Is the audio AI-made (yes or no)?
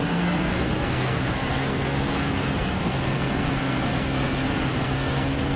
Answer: yes